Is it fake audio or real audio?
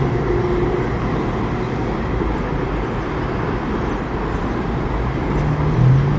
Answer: real